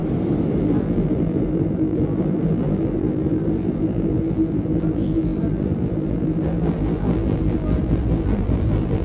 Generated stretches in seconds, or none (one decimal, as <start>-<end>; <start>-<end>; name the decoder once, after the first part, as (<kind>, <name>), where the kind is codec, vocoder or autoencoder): 0.6-9.0 (vocoder, BigVGAN v2)